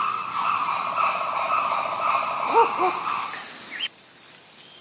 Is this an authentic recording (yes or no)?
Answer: yes